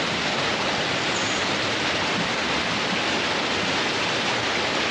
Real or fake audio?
real